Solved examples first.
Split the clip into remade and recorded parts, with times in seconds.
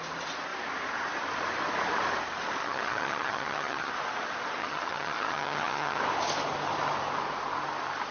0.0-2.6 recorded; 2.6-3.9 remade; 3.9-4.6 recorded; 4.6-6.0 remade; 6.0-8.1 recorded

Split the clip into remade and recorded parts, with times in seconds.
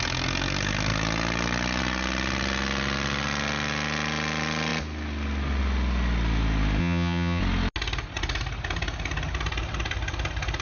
0.0-6.8 recorded; 6.8-7.4 remade; 7.4-10.6 recorded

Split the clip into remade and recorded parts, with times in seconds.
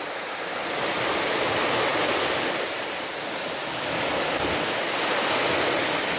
0.0-6.2 recorded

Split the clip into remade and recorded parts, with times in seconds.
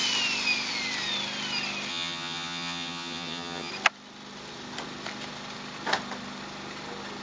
0.0-1.9 recorded; 1.9-3.7 remade; 3.7-7.2 recorded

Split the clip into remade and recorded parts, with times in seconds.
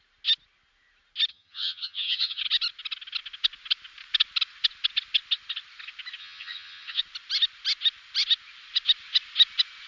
0.0-1.3 recorded; 1.3-2.4 remade; 2.4-6.2 recorded; 6.2-7.0 remade; 7.0-9.9 recorded